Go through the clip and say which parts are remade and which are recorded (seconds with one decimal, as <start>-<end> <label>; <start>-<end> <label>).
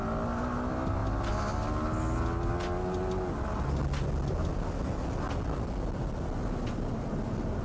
0.0-7.6 recorded